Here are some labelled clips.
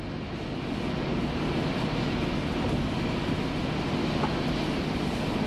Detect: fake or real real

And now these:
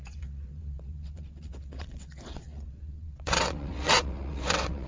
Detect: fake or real fake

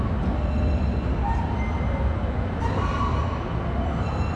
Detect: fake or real real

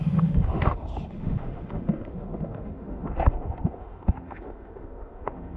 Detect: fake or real fake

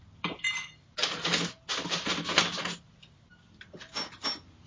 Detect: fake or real real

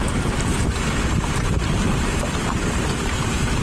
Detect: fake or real fake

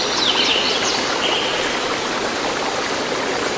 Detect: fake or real real